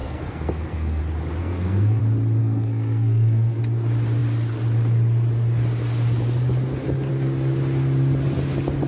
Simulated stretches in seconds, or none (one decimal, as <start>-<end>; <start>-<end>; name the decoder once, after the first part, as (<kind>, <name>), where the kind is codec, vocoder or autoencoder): 0.0-1.0 (codec, SNAC); 1.4-2.0; 2.4-3.6